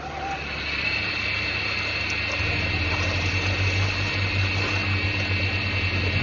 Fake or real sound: real